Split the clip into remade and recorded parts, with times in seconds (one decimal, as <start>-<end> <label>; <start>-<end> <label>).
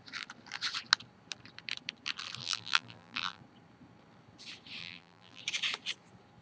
0.0-2.4 recorded; 2.4-3.4 remade; 3.4-4.8 recorded; 4.8-5.4 remade; 5.4-6.4 recorded